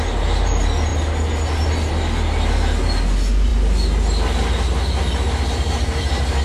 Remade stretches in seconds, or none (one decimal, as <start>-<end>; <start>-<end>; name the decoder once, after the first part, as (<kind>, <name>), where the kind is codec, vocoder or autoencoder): none